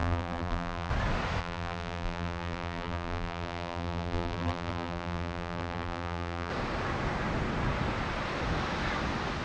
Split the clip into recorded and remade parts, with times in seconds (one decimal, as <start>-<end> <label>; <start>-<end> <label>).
0.0-0.9 remade; 0.9-1.4 recorded; 1.4-6.5 remade; 6.5-9.4 recorded